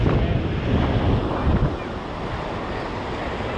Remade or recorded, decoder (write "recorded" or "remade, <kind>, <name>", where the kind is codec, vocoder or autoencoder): recorded